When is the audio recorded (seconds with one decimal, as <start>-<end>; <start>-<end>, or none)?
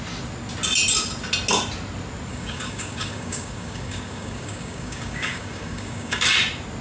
0.0-2.3; 6.2-6.8